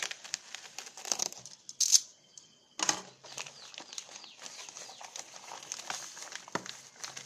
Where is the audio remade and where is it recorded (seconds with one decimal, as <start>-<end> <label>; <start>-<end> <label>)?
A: 0.0-7.3 recorded